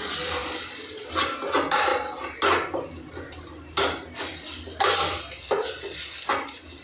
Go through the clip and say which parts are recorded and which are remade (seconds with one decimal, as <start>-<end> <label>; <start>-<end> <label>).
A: 0.0-6.8 recorded